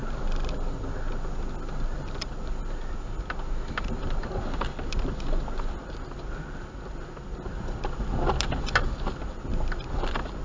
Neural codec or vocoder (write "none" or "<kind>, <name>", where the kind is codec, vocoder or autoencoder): none